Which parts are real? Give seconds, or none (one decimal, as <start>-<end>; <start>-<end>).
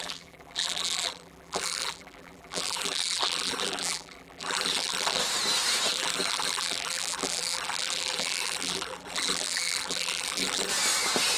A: 5.2-5.9; 10.7-11.4